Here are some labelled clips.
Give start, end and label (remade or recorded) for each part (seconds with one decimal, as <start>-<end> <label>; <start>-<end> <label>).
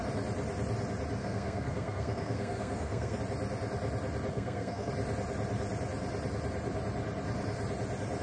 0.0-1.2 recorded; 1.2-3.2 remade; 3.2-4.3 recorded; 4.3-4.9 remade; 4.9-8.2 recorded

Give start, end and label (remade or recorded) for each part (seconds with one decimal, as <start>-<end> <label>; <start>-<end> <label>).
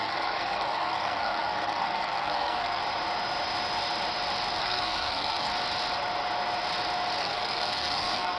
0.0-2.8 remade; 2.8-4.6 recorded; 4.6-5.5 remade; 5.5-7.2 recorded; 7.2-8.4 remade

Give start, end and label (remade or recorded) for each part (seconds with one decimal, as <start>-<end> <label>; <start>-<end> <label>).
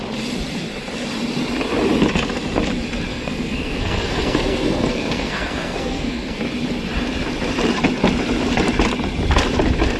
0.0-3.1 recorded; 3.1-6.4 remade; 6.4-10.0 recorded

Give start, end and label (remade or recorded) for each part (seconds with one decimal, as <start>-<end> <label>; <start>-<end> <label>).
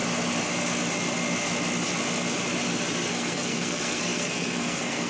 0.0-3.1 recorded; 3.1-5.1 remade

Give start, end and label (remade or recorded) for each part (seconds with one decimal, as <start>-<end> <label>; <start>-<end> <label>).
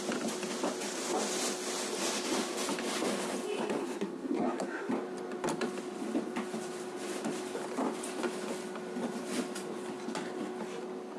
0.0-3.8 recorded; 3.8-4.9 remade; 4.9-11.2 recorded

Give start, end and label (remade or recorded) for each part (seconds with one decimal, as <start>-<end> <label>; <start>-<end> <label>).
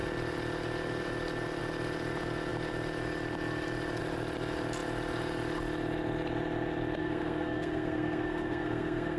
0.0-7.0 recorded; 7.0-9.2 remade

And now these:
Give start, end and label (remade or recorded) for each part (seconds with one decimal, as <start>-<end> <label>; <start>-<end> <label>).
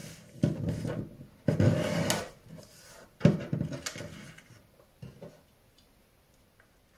0.0-7.0 recorded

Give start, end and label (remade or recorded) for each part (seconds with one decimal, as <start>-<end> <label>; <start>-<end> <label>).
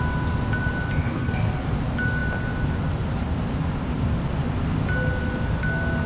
0.0-1.0 recorded; 1.0-1.5 remade; 1.5-6.1 recorded